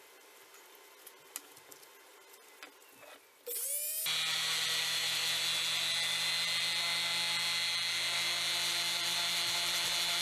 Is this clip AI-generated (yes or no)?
no